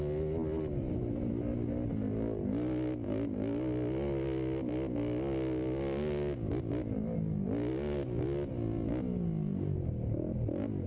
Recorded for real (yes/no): yes